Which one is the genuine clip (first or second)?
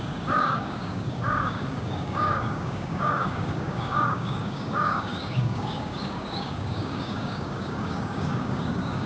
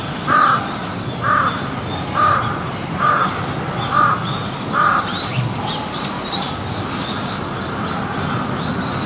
second